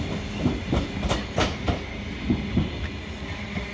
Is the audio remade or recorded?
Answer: recorded